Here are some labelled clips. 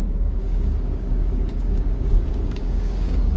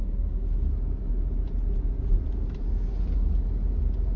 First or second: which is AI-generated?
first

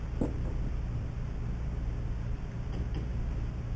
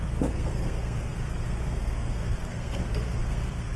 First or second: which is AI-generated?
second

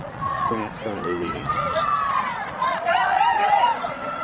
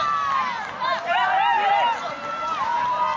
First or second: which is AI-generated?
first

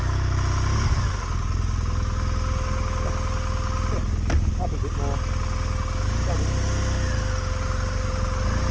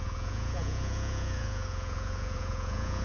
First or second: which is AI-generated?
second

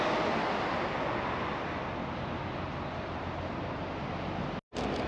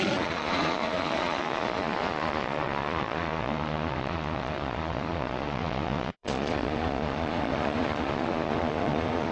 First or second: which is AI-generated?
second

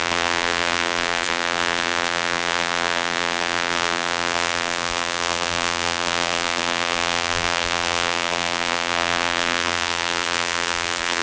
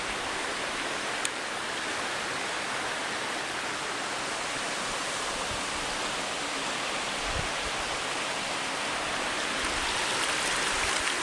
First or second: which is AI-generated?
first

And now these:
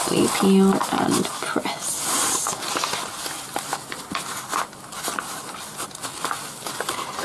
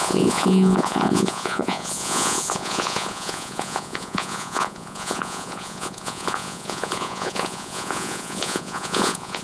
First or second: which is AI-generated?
second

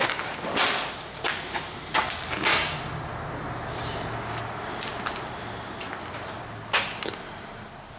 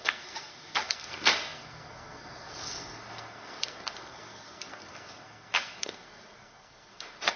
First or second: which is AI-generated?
second